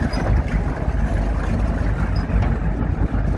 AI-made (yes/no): no